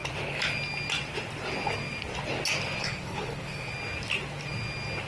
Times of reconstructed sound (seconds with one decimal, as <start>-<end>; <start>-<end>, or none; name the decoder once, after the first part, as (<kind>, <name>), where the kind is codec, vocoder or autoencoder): 2.8-3.7 (codec, HILCodec)